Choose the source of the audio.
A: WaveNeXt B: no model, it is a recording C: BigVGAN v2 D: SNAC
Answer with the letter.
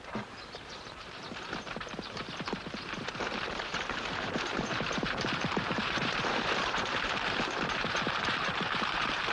C